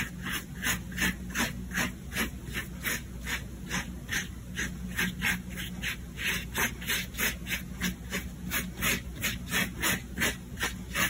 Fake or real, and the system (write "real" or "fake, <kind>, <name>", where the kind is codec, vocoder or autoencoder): real